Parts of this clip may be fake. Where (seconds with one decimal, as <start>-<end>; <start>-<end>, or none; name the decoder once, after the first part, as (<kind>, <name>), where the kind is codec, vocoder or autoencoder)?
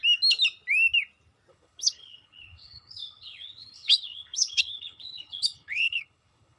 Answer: 1.5-6.6 (codec, HILCodec)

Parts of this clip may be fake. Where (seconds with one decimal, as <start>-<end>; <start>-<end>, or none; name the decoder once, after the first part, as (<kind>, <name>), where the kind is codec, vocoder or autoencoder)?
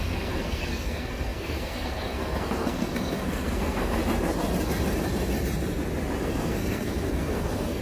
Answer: 0.0-4.0 (codec, SNAC); 6.2-7.8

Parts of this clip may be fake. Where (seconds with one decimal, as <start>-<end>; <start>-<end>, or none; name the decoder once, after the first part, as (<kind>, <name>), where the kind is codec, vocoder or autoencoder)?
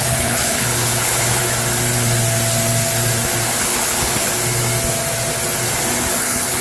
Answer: 0.0-1.4 (codec, HILCodec); 3.6-4.3; 6.1-6.6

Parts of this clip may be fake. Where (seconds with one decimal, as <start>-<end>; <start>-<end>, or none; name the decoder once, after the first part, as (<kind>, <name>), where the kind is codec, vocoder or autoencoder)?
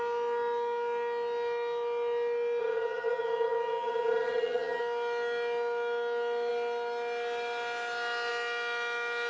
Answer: 2.6-4.8 (vocoder, HiFi-GAN)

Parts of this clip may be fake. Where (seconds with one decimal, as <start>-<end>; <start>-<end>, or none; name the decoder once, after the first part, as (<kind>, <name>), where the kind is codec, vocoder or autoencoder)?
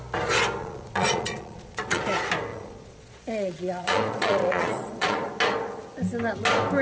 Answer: 0.6-2.0 (vocoder, Vocos); 2.5-5.3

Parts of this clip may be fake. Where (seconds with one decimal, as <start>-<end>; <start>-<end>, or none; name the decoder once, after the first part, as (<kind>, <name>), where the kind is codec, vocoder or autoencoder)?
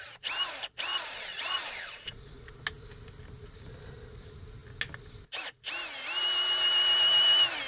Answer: 0.9-2.5 (vocoder, Vocos)